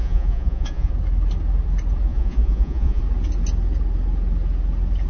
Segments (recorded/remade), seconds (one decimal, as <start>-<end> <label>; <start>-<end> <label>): 0.0-0.9 remade; 0.9-2.1 recorded; 2.1-3.0 remade; 3.0-5.1 recorded